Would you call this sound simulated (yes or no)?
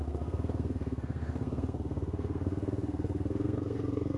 yes